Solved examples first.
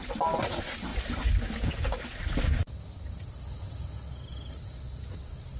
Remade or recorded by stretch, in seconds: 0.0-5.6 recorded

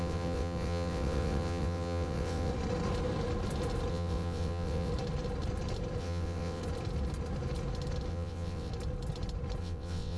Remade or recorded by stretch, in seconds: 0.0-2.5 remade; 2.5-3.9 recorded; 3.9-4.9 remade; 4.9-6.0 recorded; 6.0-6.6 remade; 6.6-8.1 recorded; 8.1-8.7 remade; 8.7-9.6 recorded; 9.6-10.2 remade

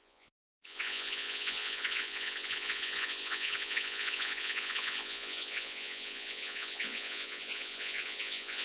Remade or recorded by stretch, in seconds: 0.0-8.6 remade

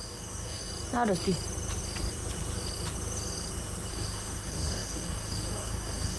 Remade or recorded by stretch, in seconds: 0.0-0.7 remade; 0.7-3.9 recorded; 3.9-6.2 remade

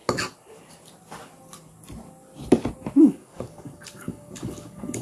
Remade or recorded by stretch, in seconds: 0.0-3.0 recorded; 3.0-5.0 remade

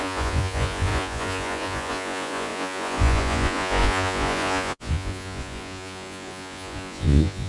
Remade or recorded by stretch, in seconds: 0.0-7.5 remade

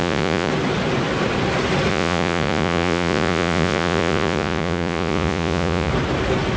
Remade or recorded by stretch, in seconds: 0.0-0.5 remade; 0.5-1.9 recorded; 1.9-5.9 remade; 5.9-6.6 recorded